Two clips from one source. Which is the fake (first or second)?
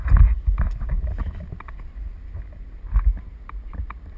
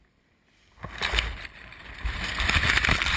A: second